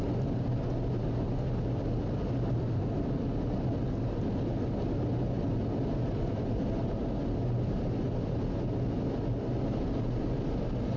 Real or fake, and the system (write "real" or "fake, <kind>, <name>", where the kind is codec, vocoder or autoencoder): real